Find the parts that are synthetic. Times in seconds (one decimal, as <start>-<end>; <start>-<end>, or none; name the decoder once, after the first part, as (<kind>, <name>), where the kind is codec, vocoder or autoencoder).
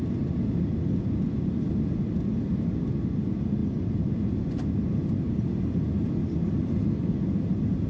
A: none